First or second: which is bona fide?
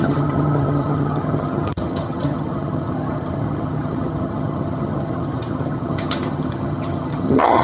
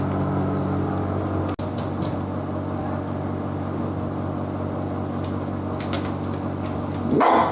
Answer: second